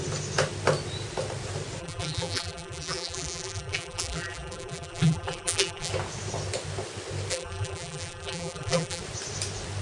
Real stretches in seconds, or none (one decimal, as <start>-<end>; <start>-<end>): 0.0-1.8; 5.9-7.3; 9.0-9.8